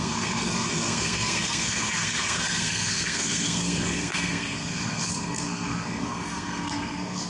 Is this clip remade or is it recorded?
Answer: remade